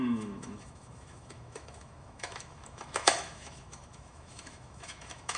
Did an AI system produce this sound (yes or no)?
yes